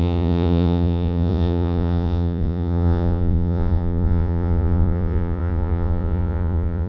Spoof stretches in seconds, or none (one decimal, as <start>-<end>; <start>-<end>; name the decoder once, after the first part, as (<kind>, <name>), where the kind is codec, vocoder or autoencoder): 0.0-6.9 (vocoder, Vocos)